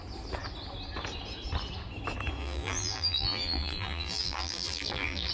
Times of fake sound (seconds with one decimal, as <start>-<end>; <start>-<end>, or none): 2.4-5.3